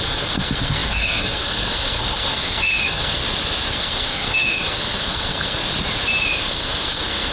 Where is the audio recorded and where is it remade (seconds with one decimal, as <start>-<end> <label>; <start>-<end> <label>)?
0.0-3.2 remade; 3.2-3.7 recorded; 3.7-5.6 remade; 5.6-6.4 recorded; 6.4-7.3 remade